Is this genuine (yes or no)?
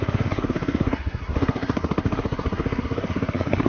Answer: no